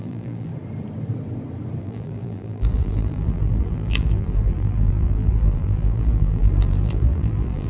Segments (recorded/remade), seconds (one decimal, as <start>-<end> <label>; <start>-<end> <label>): 0.0-0.5 remade; 0.5-1.8 recorded; 1.8-7.7 remade

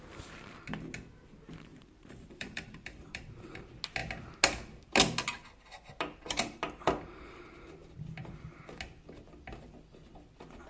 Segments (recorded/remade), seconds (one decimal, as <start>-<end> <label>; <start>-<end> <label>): 0.0-1.7 recorded; 1.7-3.6 remade; 3.6-10.7 recorded

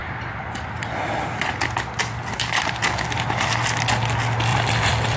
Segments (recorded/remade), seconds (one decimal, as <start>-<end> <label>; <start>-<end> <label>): 0.0-4.5 recorded; 4.5-5.2 remade

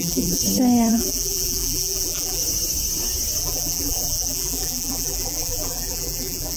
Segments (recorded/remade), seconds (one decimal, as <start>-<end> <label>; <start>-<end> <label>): 0.0-0.4 remade; 0.4-0.9 recorded; 0.9-2.4 remade; 2.4-3.4 recorded; 3.4-6.6 remade

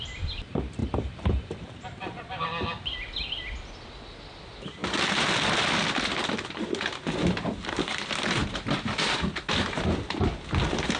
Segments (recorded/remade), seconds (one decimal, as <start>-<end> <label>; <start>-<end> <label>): 0.0-0.8 recorded; 0.8-2.4 remade; 2.4-11.0 recorded

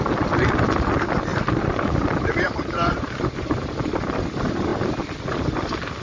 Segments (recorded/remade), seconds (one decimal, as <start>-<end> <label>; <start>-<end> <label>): 0.0-1.3 recorded; 1.3-3.6 remade; 3.6-6.0 recorded

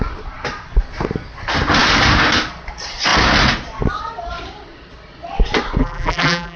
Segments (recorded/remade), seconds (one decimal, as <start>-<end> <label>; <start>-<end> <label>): 0.0-5.8 recorded; 5.8-6.6 remade

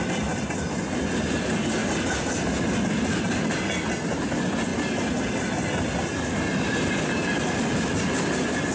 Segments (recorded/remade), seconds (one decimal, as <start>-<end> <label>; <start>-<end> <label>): 0.0-4.7 recorded; 4.7-5.4 remade; 5.4-8.7 recorded